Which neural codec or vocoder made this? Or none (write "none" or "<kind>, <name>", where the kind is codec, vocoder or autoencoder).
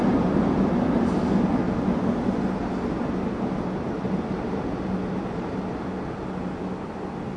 none